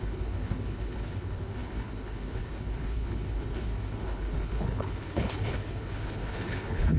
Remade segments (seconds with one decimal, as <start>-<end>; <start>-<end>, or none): 0.0-7.0